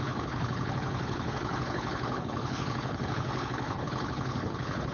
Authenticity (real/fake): fake